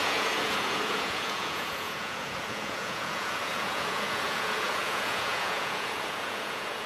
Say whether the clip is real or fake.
fake